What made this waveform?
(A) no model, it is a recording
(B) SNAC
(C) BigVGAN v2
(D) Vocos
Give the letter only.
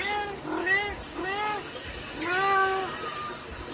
A